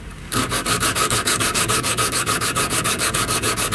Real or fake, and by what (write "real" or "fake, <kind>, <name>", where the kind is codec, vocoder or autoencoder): fake, codec, DAC